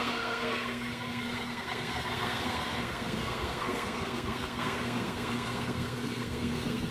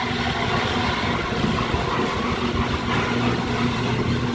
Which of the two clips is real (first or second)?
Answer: second